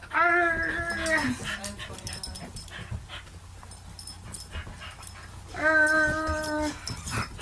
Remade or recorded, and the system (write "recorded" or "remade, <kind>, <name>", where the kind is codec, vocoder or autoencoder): recorded